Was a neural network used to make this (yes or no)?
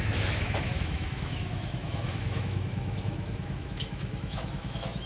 yes